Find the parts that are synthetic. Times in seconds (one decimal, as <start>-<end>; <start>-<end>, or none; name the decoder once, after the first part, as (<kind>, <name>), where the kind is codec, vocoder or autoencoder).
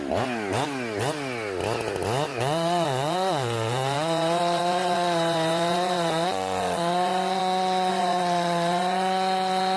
2.3-7.4 (vocoder, Vocos); 7.9-9.8